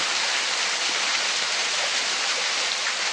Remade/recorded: recorded